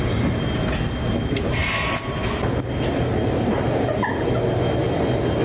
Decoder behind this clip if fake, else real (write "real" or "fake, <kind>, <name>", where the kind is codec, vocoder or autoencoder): real